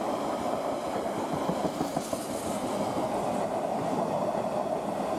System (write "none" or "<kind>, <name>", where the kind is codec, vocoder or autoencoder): none